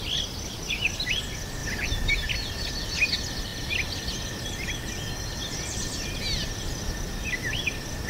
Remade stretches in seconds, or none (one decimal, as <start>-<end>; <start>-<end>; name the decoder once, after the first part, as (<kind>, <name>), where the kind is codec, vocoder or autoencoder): none